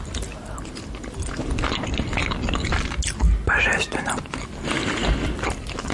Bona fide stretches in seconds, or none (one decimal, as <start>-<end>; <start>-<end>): 0.0-5.9